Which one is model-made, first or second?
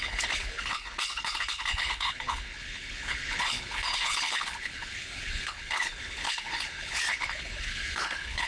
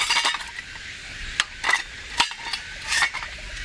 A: first